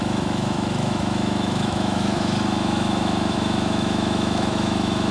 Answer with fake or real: fake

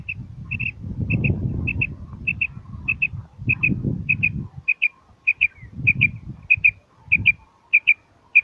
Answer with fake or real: real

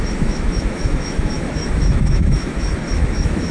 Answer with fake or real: fake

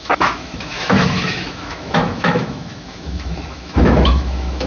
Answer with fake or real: fake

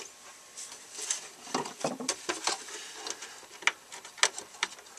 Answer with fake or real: real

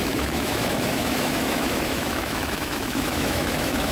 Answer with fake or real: fake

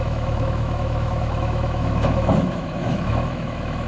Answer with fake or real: fake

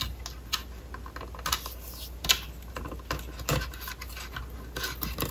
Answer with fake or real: real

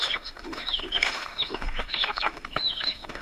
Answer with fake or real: fake